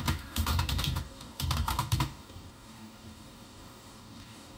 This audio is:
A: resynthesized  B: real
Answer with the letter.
A